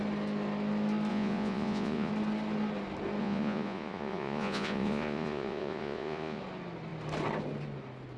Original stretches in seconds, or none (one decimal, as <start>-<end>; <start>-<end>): 0.0-1.1; 2.1-3.2; 6.4-8.2

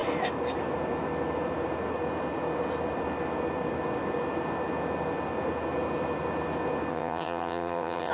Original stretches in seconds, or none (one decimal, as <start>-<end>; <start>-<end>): 0.0-6.9

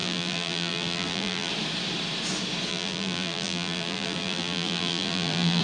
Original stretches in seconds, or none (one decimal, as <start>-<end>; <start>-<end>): 1.5-2.7

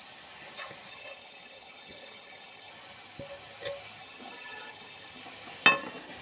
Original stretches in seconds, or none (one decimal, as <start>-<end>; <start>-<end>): 0.0-0.9; 2.7-4.0; 5.2-6.2